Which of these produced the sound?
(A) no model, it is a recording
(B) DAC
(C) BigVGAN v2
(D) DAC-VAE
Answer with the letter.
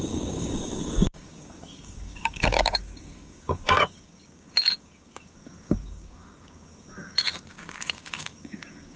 B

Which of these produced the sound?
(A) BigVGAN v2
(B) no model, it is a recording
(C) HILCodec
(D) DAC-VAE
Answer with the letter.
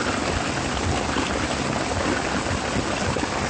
B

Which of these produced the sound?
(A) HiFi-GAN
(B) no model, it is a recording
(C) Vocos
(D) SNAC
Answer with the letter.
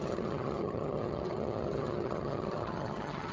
A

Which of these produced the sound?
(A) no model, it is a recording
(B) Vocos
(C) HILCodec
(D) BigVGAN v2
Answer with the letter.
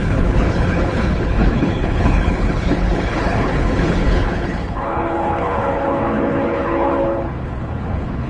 C